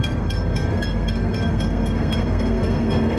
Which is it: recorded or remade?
remade